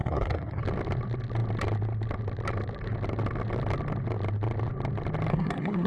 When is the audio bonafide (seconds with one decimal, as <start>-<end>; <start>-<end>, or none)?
0.6-5.3